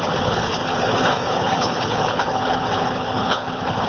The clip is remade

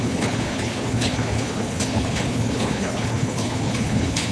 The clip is remade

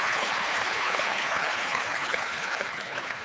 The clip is remade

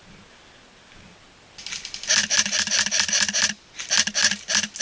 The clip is recorded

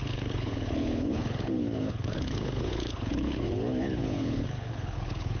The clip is remade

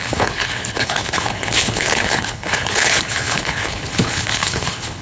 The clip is remade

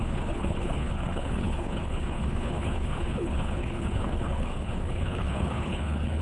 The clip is remade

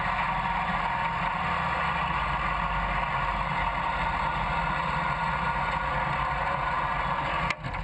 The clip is recorded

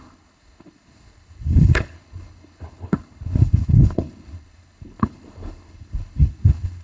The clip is remade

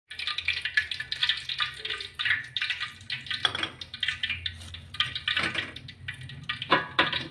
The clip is recorded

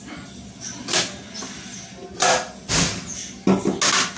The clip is recorded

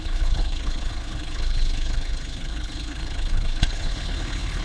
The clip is remade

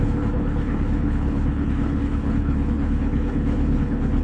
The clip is remade